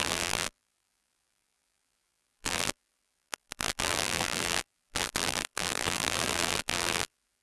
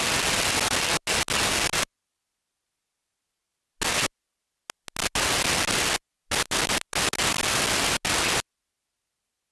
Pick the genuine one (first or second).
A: second